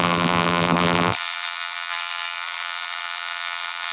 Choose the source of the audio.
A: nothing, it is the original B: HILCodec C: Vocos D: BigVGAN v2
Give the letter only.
D